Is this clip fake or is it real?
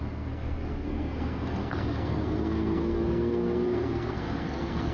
fake